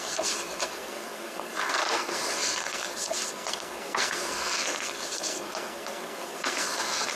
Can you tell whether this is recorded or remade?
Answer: remade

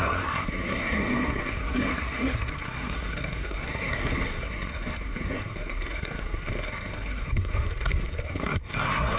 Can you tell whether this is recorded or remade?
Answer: remade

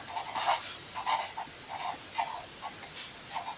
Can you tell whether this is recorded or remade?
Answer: recorded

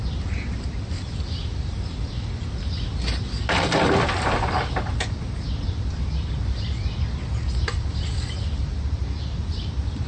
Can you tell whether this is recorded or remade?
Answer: recorded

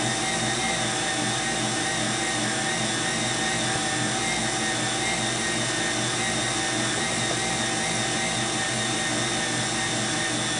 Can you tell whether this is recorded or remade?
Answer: recorded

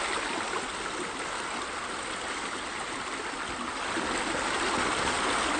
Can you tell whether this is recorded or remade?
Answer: recorded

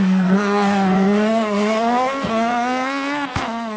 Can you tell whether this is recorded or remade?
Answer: remade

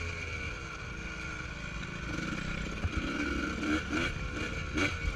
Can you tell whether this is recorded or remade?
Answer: recorded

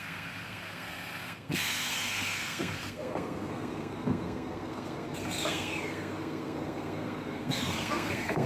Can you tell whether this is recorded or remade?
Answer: remade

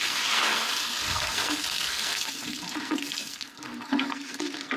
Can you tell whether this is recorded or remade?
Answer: remade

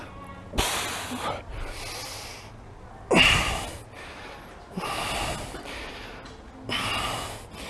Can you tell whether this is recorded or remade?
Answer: recorded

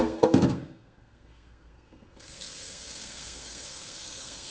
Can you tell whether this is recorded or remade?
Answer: remade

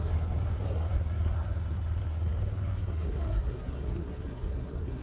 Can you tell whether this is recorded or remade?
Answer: remade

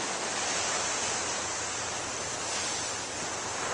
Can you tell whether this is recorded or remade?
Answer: recorded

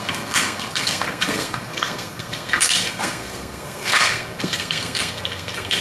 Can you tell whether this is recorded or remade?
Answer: remade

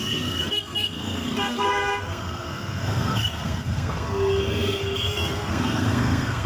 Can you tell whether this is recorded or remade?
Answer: remade